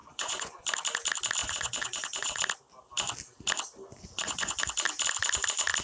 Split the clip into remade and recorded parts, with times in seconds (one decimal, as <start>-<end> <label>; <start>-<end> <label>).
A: 0.0-0.6 remade; 0.6-1.4 recorded; 1.4-2.4 remade; 2.4-3.9 recorded; 3.9-4.6 remade; 4.6-5.8 recorded